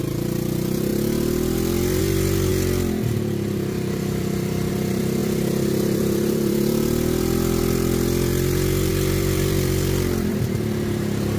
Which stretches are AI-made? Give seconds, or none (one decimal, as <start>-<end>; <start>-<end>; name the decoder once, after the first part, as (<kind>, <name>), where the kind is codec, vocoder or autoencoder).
0.0-11.4 (vocoder, BigVGAN v2)